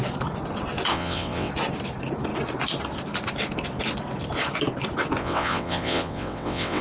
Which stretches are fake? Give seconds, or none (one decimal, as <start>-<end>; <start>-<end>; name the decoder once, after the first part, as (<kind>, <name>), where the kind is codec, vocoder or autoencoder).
0.9-1.5 (vocoder, WaveNeXt); 5.2-6.8